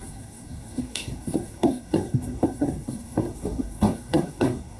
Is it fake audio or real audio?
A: fake